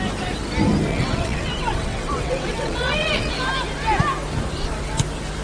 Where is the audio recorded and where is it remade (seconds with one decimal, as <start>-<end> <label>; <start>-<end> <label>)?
0.0-0.9 recorded; 0.9-3.3 remade; 3.3-5.4 recorded